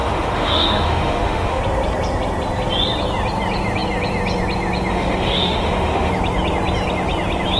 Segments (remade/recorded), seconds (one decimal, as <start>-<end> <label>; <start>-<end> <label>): 0.0-1.6 remade; 1.6-4.9 recorded; 4.9-6.1 remade; 6.1-7.6 recorded